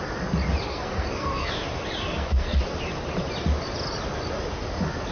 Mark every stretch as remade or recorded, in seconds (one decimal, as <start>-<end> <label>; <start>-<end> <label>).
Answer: 0.0-0.7 recorded; 0.7-1.5 remade; 1.5-2.1 recorded; 2.1-2.6 remade; 2.6-5.1 recorded